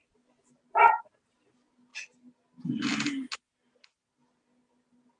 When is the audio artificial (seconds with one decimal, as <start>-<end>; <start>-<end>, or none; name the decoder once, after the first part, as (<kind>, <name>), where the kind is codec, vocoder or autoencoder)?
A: 0.0-0.9 (vocoder, BigVGAN v2)